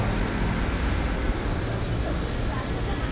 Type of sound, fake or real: real